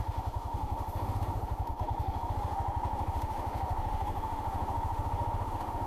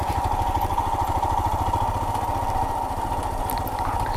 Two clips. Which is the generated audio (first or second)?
first